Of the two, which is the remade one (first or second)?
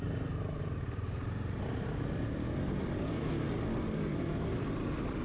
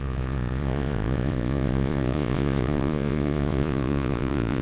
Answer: second